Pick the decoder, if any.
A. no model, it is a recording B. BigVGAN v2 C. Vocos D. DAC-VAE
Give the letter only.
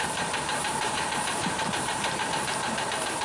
B